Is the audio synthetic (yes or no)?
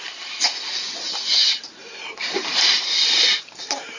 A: no